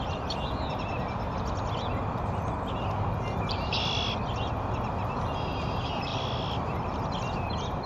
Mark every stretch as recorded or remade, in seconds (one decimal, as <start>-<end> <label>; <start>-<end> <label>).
0.0-7.9 recorded